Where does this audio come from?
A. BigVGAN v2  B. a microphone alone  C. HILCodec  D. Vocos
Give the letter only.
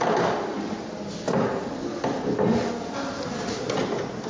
B